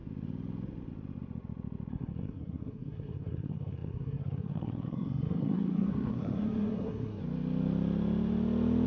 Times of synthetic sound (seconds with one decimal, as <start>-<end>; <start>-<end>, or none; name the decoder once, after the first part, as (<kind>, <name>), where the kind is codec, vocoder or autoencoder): 1.9-7.2 (codec, SNAC)